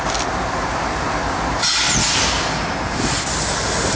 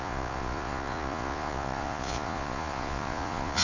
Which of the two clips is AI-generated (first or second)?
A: second